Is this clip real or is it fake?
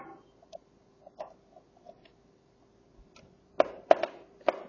real